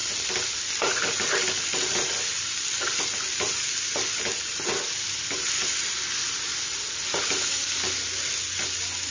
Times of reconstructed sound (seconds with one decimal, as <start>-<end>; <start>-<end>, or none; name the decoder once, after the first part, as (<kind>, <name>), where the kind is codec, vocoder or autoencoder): none